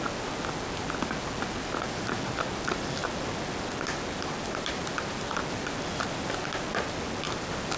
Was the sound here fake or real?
real